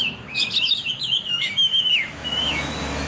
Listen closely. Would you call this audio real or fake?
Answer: fake